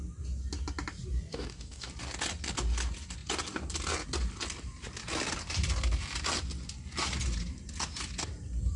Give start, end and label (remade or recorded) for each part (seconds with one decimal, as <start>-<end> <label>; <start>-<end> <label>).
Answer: 0.0-1.3 recorded; 1.3-1.9 remade; 1.9-8.8 recorded